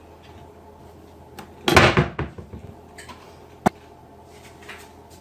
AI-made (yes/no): no